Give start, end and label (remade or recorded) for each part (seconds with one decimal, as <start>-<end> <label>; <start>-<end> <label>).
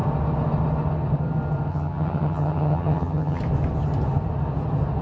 0.0-1.7 recorded; 1.7-3.4 remade; 3.4-5.0 recorded